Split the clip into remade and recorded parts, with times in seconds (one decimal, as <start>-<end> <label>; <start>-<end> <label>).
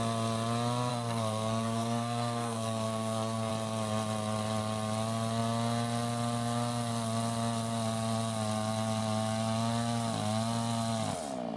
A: 0.0-0.9 recorded; 0.9-3.5 remade; 3.5-11.6 recorded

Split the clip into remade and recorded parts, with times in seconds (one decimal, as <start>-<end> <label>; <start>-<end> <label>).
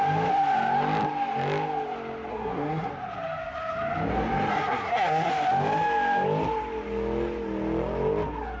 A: 0.0-2.3 recorded; 2.3-2.9 remade; 2.9-4.5 recorded; 4.5-5.3 remade; 5.3-8.6 recorded